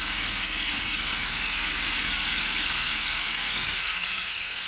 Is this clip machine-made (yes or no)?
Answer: yes